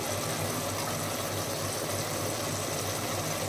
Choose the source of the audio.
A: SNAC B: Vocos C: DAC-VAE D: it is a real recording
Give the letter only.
D